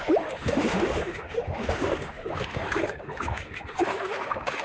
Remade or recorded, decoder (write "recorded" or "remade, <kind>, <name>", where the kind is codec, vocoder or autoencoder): remade, autoencoder, DAC-VAE